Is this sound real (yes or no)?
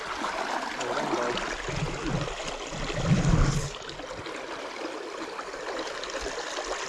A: yes